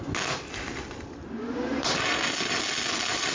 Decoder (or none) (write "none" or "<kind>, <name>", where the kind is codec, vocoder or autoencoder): none